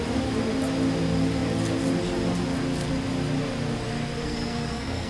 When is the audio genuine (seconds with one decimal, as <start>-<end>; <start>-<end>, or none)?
0.0-4.2

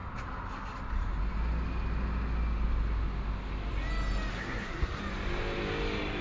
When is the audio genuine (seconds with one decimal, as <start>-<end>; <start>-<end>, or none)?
0.0-4.3; 5.0-6.2

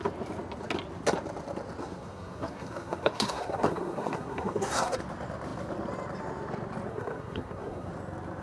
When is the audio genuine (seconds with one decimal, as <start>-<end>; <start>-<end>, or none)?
0.0-1.8; 5.0-6.9; 7.9-8.4